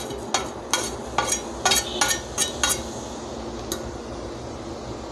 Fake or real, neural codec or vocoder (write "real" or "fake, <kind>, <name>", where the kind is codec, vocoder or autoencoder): real